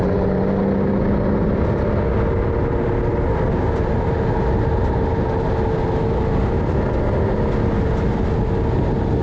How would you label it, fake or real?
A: real